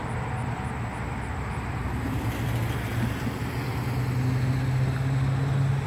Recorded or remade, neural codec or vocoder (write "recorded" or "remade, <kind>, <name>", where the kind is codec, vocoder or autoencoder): recorded